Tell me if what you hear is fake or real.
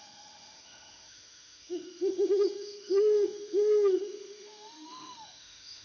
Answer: fake